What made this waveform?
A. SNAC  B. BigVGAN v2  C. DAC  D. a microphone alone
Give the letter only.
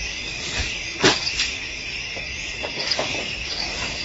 C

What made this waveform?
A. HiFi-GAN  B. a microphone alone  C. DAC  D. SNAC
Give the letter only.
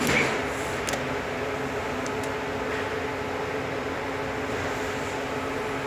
B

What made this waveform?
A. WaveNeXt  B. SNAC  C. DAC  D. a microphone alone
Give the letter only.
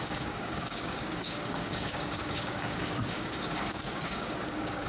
C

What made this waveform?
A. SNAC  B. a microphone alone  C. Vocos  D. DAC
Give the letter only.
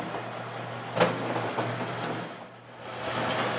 B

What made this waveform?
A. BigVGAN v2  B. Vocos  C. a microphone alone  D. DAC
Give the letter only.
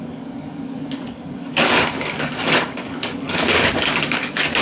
D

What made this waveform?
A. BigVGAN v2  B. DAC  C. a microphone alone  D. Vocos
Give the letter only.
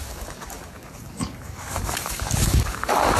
B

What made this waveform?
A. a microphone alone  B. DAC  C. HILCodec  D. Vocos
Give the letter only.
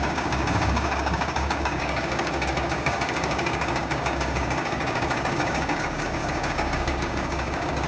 B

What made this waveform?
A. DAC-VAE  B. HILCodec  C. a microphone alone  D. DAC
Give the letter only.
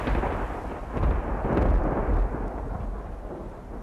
C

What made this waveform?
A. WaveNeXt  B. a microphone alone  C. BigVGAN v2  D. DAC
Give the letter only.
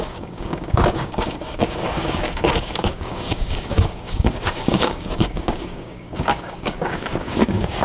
D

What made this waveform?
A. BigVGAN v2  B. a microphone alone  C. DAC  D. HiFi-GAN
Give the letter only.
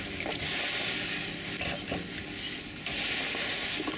B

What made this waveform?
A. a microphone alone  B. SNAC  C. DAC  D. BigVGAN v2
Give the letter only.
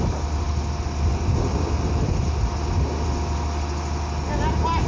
A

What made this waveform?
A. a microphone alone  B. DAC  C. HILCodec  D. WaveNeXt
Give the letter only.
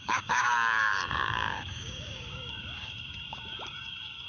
B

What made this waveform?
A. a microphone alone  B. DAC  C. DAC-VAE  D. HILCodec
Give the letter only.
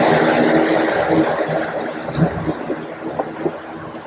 A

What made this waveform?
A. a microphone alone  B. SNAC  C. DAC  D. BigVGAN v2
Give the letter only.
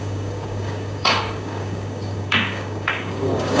C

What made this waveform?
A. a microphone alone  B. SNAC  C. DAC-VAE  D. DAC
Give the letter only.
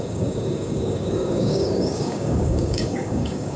D